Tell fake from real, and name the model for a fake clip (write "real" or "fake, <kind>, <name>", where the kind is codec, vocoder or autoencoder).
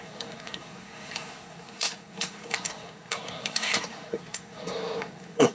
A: fake, codec, SNAC